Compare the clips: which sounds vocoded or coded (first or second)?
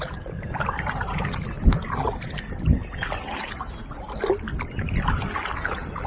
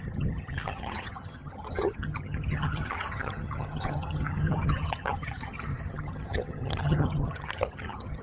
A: second